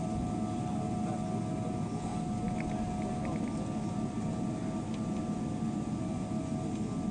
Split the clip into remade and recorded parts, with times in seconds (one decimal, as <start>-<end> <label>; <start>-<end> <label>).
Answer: 0.0-7.1 recorded